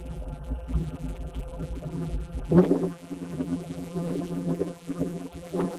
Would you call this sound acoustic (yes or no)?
no